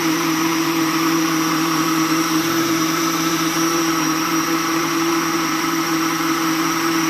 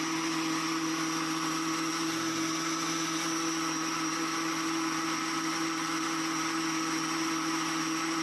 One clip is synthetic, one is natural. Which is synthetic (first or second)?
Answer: first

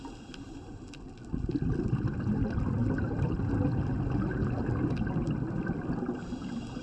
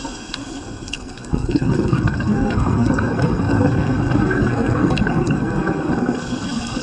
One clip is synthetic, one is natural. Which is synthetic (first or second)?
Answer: second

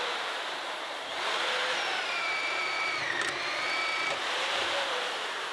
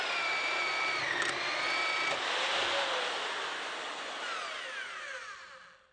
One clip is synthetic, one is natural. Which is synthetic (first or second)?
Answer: first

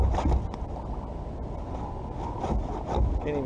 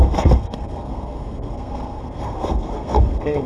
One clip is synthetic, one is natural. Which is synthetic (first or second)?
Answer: second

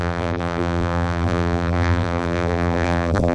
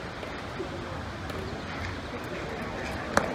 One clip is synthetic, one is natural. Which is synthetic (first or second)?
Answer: first